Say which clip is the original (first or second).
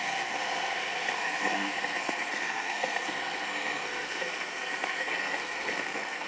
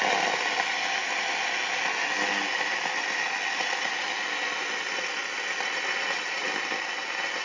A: second